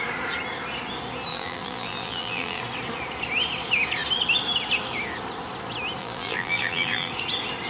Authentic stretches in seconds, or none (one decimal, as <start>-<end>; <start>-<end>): 0.0-1.3; 2.6-6.0; 7.1-7.7